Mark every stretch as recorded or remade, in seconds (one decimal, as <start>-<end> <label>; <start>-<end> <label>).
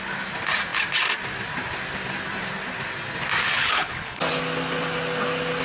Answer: 0.0-3.4 recorded; 3.4-4.2 remade; 4.2-5.6 recorded